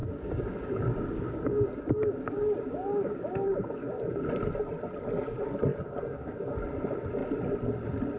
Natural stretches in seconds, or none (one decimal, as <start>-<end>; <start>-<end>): 4.3-5.7; 6.6-8.2